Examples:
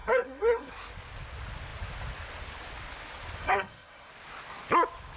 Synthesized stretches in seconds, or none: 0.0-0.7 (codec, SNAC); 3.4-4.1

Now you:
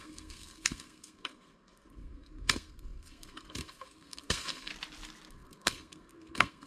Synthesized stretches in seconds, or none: 0.0-4.7 (codec, SNAC); 5.3-6.7

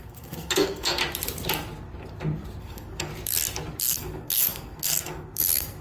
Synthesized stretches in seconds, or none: 0.0-1.0 (codec, SNAC); 2.6-3.1; 3.8-5.8